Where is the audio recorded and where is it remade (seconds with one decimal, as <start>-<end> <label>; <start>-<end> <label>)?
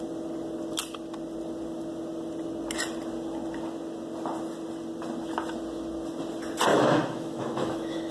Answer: 0.0-6.7 recorded; 6.7-8.1 remade